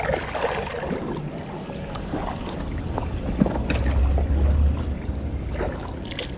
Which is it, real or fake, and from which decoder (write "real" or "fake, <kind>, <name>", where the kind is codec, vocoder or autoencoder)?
real